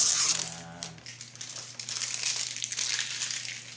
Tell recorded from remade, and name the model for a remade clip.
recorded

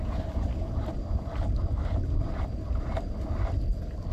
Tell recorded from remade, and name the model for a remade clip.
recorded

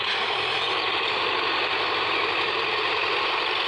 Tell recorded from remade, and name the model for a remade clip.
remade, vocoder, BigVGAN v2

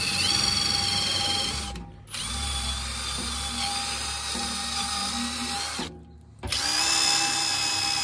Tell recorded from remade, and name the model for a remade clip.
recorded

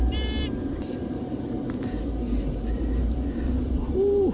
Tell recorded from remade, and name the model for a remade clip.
remade, vocoder, BigVGAN v2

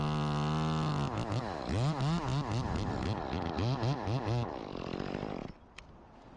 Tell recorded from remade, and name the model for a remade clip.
recorded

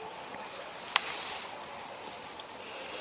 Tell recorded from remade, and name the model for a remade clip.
recorded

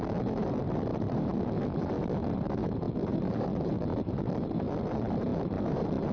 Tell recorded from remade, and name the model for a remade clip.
remade, vocoder, BigVGAN v2